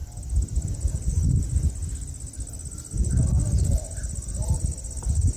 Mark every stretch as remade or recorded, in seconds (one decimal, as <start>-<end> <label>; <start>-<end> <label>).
0.0-5.4 recorded